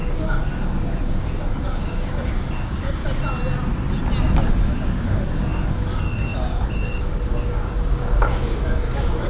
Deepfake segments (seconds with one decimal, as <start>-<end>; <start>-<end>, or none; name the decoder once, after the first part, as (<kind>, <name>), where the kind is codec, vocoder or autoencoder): 0.0-3.0 (codec, DAC); 4.5-9.3